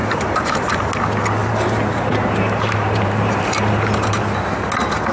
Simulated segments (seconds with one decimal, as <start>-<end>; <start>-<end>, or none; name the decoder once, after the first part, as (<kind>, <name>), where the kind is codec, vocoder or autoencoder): 0.0-0.5 (vocoder, BigVGAN v2); 1.4-4.2